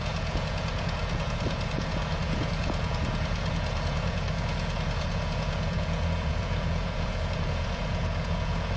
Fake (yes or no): yes